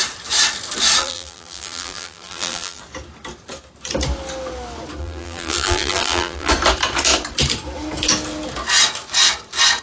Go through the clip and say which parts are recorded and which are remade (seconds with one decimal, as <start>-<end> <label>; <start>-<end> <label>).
0.0-1.0 recorded; 1.0-2.8 remade; 2.8-5.0 recorded; 5.0-6.5 remade; 6.5-9.8 recorded